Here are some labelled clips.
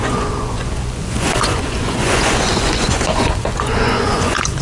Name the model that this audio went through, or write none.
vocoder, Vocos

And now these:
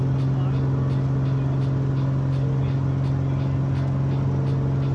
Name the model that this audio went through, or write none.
none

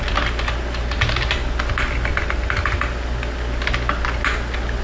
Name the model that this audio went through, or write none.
none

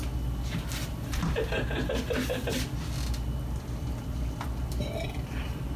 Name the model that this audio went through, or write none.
none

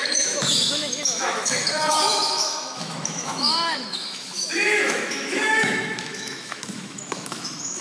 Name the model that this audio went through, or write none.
autoencoder, DAC-VAE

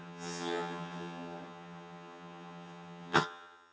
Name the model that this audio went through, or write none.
vocoder, HiFi-GAN